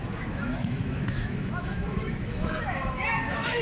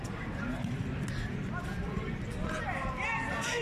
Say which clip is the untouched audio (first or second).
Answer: second